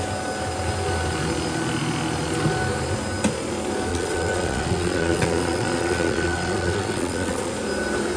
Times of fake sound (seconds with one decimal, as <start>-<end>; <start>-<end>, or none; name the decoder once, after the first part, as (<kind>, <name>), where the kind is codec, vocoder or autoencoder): 3.9-7.5 (vocoder, Vocos)